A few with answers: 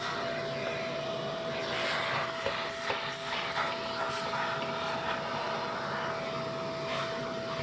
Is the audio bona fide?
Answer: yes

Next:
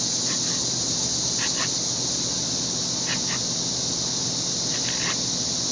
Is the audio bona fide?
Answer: yes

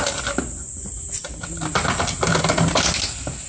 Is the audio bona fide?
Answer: yes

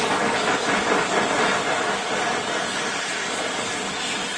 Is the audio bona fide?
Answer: yes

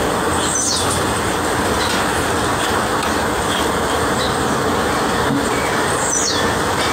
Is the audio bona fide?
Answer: yes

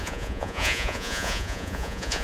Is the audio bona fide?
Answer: no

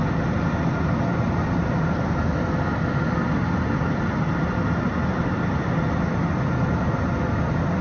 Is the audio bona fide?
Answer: yes